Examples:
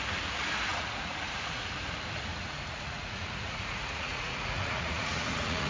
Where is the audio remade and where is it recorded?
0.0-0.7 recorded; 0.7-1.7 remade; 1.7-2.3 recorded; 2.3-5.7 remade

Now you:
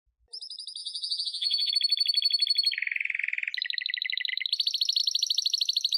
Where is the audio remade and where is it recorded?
0.0-0.8 recorded; 0.8-1.7 remade; 1.7-6.0 recorded

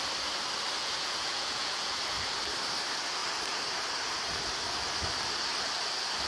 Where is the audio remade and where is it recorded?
0.0-0.8 recorded; 0.8-2.0 remade; 2.0-6.3 recorded

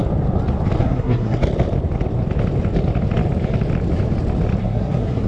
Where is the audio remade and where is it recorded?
0.0-0.8 recorded; 0.8-1.4 remade; 1.4-4.6 recorded; 4.6-5.3 remade

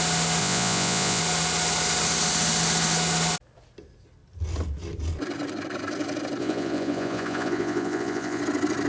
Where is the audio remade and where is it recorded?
0.0-0.4 recorded; 0.4-1.2 remade; 1.2-6.4 recorded; 6.4-8.4 remade; 8.4-8.9 recorded

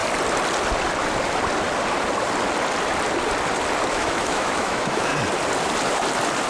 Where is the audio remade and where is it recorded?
0.0-3.9 recorded; 3.9-5.1 remade; 5.1-6.5 recorded

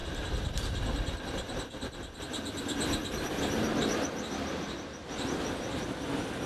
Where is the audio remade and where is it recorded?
0.0-5.0 recorded; 5.0-5.6 remade; 5.6-6.5 recorded